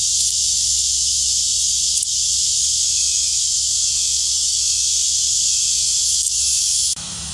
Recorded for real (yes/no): no